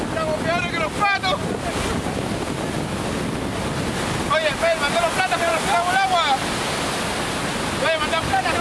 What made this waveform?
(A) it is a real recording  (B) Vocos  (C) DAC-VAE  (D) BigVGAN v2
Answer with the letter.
A